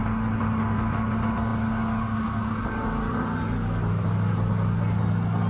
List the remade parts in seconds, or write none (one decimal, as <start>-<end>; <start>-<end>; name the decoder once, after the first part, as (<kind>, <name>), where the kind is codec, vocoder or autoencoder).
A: none